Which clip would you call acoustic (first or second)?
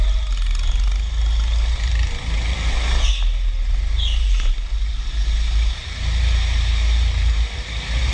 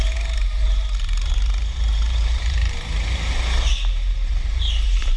first